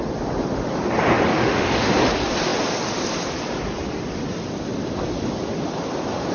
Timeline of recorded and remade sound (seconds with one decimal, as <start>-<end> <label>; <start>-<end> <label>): 0.0-1.3 recorded; 1.3-1.9 remade; 1.9-6.3 recorded